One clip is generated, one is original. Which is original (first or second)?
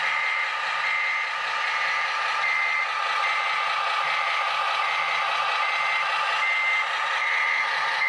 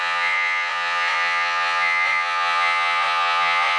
first